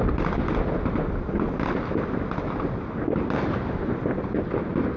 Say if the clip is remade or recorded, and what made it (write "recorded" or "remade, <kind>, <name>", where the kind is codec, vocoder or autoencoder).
recorded